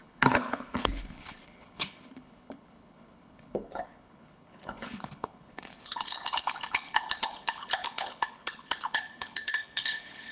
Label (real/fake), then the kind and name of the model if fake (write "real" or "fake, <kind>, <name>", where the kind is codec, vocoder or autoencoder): fake, codec, HILCodec